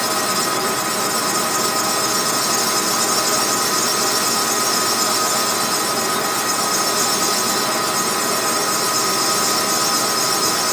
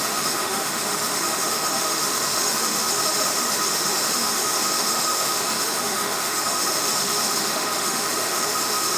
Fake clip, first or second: second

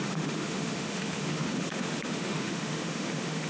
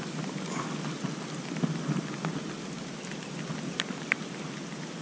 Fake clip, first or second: first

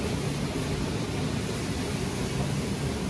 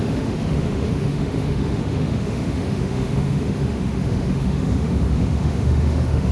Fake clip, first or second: second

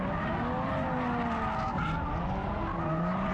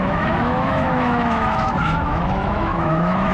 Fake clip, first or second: second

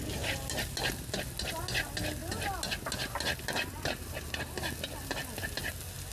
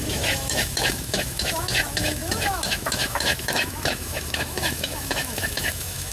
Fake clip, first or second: second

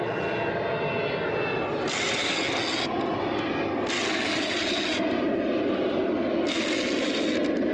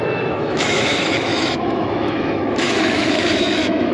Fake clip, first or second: second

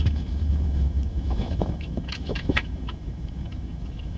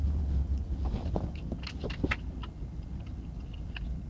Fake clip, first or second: first